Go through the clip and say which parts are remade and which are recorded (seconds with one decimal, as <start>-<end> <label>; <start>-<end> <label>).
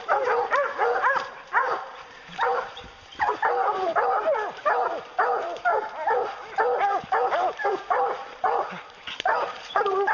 0.0-5.7 remade; 5.7-6.2 recorded; 6.2-10.1 remade